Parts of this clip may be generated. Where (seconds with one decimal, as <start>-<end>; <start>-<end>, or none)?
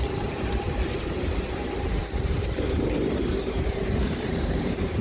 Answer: 0.0-2.0; 3.7-5.0